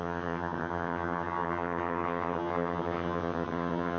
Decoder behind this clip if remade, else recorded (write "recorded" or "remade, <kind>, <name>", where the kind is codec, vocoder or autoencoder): remade, vocoder, HiFi-GAN